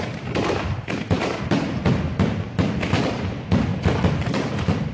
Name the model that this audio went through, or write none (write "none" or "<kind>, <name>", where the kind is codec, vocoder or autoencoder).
none